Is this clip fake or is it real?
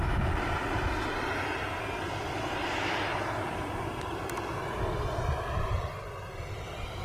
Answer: real